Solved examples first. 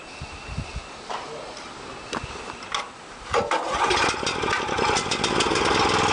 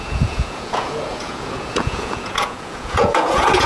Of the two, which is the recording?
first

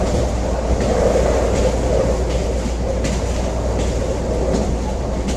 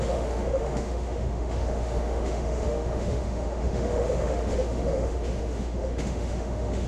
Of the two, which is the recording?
first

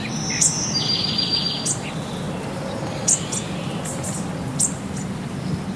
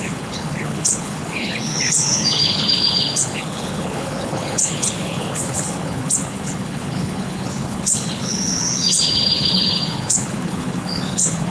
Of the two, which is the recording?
first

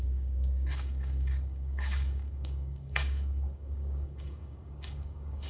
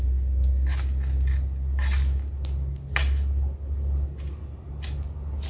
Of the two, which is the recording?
second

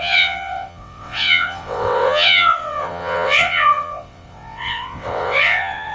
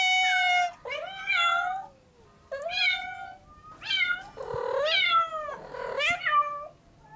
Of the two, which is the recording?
second